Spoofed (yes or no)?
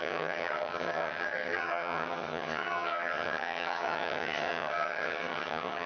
yes